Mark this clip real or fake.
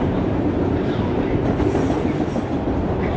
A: real